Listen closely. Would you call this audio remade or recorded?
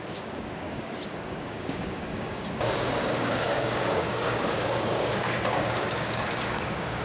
remade